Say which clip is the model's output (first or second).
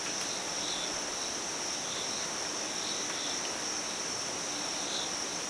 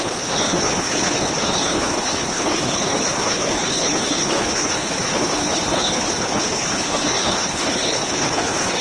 second